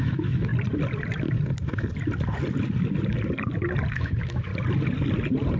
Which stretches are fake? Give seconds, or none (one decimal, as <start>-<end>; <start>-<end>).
0.0-0.5; 3.9-4.5